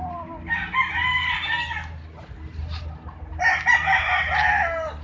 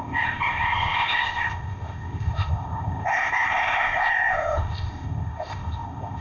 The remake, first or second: second